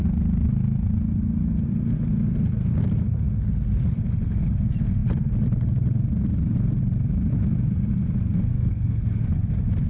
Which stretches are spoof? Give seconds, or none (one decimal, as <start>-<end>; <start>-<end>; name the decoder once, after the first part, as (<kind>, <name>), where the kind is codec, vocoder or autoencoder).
8.5-9.3 (codec, SNAC)